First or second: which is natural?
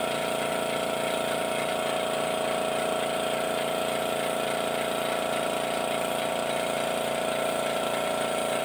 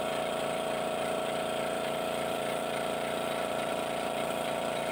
first